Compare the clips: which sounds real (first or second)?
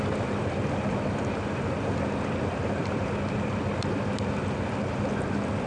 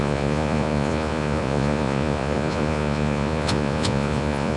first